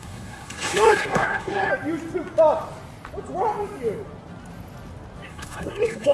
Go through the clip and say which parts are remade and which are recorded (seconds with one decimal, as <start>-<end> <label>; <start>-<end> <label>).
0.0-1.7 remade; 1.7-5.3 recorded; 5.3-6.1 remade